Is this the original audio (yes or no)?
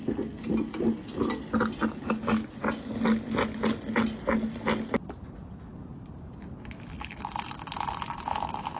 yes